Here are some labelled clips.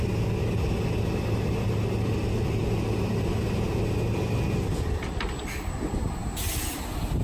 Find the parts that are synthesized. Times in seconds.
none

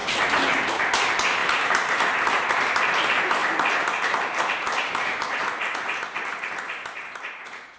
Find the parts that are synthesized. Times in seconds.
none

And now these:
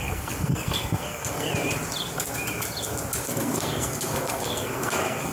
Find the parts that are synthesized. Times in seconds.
0.0-1.5; 3.2-5.3

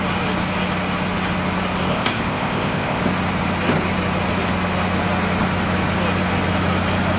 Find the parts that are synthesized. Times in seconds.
1.9-3.0

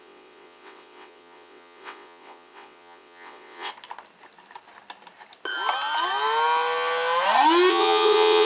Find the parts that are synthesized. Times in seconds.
0.0-3.7; 7.7-8.4